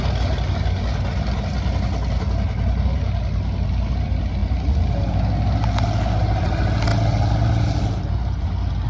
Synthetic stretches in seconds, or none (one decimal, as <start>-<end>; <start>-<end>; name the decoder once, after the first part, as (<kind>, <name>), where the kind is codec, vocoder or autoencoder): none